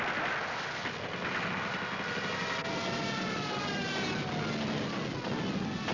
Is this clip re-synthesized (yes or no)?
no